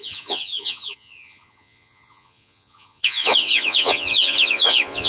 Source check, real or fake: fake